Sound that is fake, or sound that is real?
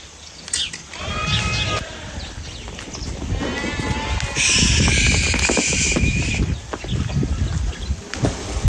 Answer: real